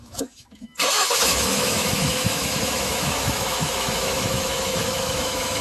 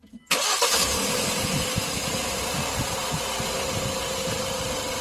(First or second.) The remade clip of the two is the first